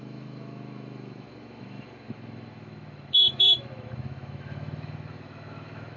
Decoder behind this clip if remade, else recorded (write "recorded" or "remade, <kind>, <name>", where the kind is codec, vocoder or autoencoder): remade, autoencoder, DAC-VAE